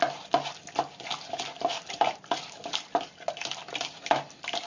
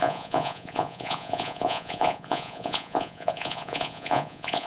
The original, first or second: first